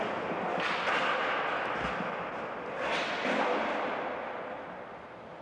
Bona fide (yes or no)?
yes